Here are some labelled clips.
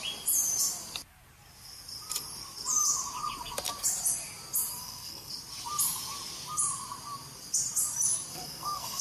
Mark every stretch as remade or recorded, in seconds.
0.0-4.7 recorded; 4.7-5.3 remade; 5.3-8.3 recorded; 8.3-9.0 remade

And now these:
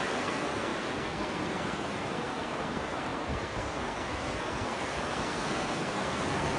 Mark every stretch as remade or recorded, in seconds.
0.0-6.6 remade

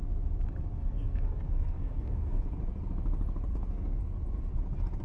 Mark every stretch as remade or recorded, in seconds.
0.0-0.8 recorded; 0.8-2.4 remade; 2.4-3.5 recorded; 3.5-4.0 remade; 4.0-5.0 recorded

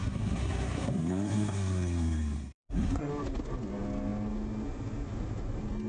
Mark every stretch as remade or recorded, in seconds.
0.0-3.1 remade; 3.1-5.9 recorded

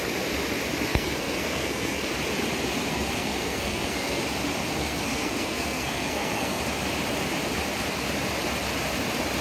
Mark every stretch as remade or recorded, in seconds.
0.0-0.9 recorded; 0.9-2.1 remade; 2.1-2.9 recorded; 2.9-4.2 remade; 4.2-4.8 recorded; 4.8-6.6 remade; 6.6-9.4 recorded

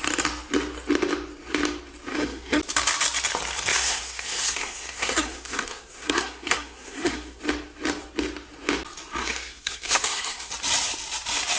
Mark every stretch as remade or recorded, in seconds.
0.0-2.1 recorded; 2.1-2.6 remade; 2.6-3.7 recorded; 3.7-7.4 remade; 7.4-9.2 recorded; 9.2-10.5 remade; 10.5-11.6 recorded